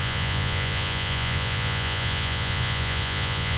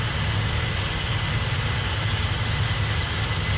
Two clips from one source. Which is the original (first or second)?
second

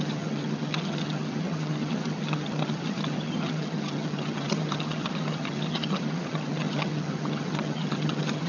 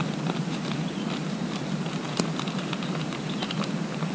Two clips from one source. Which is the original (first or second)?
second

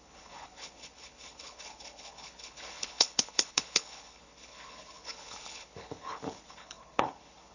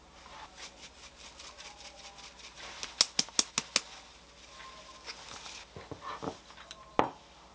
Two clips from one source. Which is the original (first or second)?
second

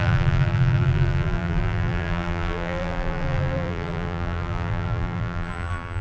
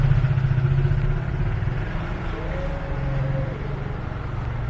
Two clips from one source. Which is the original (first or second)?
second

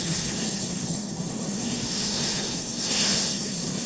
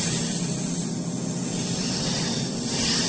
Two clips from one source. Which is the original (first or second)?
second